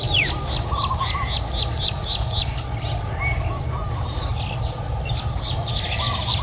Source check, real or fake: real